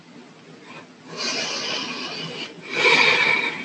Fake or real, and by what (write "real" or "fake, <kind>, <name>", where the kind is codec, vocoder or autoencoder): real